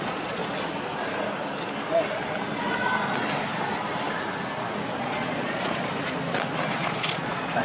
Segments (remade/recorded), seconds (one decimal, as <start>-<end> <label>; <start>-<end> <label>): 0.0-0.4 remade; 0.4-5.0 recorded; 5.0-5.9 remade; 5.9-6.7 recorded; 6.7-7.6 remade